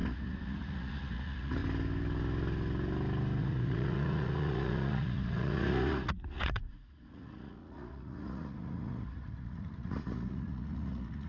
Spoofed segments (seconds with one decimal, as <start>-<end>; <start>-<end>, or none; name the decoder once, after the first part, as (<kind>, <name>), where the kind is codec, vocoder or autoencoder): 0.0-1.6 (vocoder, Vocos); 3.4-11.3